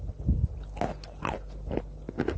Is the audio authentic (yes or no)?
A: yes